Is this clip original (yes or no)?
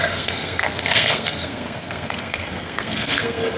no